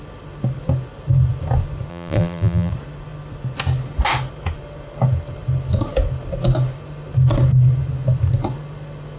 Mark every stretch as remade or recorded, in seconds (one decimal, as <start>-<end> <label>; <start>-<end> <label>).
0.0-1.9 recorded; 1.9-2.7 remade; 2.7-9.2 recorded